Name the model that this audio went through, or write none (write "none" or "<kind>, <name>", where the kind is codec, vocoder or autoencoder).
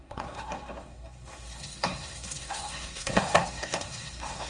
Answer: codec, SNAC